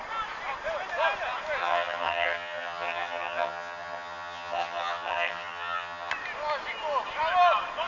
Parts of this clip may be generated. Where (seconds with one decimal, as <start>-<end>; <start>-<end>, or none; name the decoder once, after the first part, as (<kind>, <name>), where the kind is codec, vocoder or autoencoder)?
1.6-6.1 (vocoder, HiFi-GAN)